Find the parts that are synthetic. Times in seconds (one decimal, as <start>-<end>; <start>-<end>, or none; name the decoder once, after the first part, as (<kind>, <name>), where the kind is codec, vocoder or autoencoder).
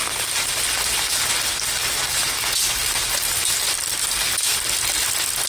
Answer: none